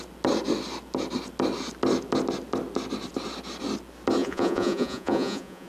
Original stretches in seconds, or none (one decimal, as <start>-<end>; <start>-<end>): 0.0-4.2